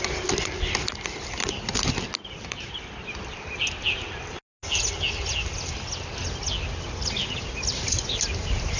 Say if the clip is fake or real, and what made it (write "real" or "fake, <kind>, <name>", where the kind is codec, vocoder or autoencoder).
real